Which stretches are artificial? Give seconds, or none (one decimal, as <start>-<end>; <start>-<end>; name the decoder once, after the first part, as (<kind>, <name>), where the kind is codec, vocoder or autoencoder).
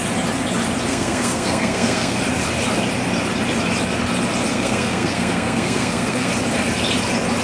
0.9-2.2 (codec, SNAC); 4.5-6.3